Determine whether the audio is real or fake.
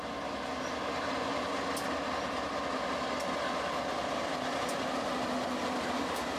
real